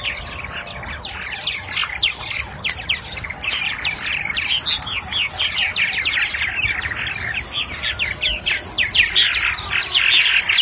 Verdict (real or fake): real